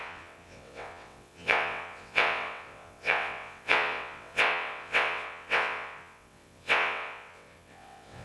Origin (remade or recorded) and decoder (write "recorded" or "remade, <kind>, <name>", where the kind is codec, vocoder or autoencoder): remade, vocoder, WaveNeXt